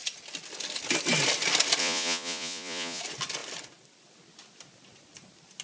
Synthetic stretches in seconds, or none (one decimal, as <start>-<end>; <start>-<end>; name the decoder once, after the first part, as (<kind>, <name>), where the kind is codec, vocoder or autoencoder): 1.8-3.0 (vocoder, Vocos)